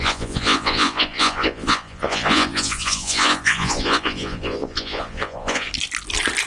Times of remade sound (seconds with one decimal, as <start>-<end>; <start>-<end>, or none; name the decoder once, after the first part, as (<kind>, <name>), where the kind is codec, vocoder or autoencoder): 0.0-5.7 (vocoder, Vocos)